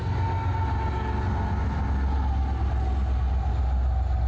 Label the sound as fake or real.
real